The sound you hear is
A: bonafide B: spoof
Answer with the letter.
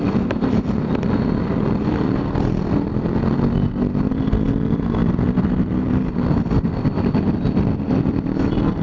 B